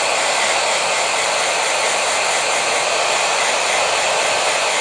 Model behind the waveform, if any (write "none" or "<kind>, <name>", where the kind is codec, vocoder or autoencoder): none